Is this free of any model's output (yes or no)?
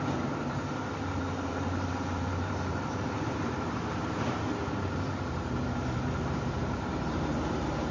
no